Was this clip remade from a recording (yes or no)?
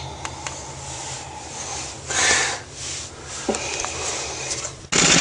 no